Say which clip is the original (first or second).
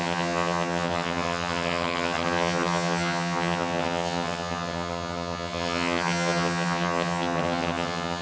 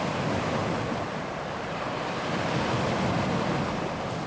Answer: second